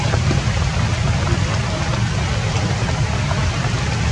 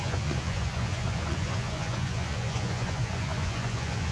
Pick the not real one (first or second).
second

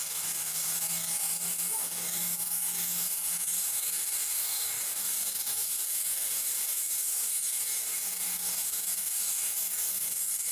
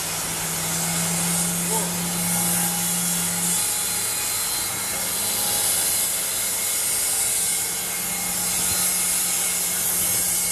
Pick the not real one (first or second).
first